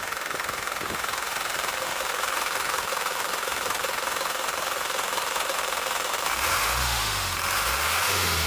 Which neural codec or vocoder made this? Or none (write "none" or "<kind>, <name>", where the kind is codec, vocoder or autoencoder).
autoencoder, DAC-VAE